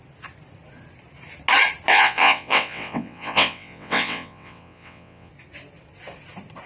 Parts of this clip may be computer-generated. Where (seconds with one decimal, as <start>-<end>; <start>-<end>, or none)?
1.9-5.3